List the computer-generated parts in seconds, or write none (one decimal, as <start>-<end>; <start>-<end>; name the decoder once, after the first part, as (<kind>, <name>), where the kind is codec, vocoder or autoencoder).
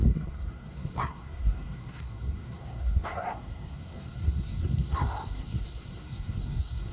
0.0-6.9 (codec, SNAC)